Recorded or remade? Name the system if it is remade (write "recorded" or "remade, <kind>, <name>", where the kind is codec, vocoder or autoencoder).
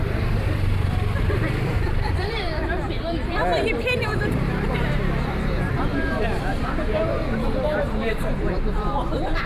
remade, vocoder, BigVGAN v2